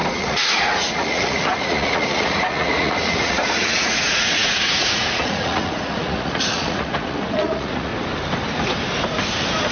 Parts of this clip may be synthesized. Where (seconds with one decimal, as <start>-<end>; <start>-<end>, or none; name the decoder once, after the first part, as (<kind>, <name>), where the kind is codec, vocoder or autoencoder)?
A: 0.0-7.9 (vocoder, Vocos)